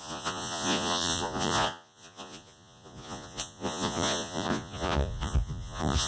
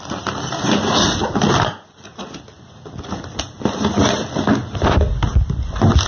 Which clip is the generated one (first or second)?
first